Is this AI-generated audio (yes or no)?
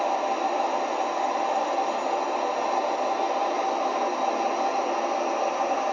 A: no